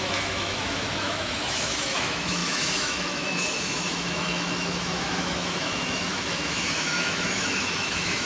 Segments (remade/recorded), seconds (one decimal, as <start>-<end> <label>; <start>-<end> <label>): 0.0-8.3 remade